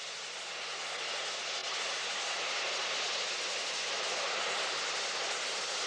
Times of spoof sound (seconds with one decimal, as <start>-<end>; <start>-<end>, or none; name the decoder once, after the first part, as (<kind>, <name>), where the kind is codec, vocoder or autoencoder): none